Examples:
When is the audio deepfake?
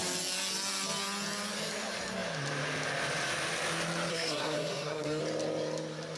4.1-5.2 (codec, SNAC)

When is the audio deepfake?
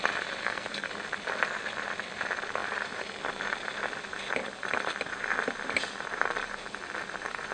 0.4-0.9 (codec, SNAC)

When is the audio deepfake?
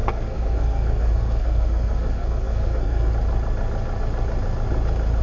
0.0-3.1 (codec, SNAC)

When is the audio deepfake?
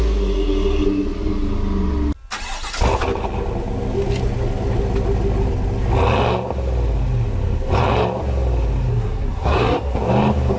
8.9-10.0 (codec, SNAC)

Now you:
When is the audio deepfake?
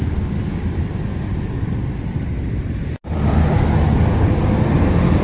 none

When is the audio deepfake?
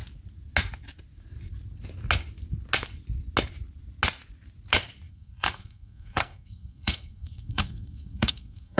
5.1-8.8 (codec, SNAC)